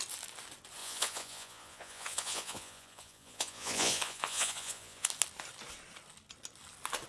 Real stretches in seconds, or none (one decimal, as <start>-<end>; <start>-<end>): 0.0-0.8; 5.1-7.1